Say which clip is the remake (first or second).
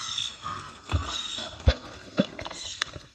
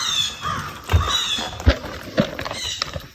first